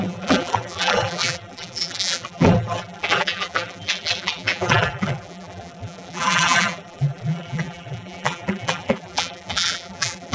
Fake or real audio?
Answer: fake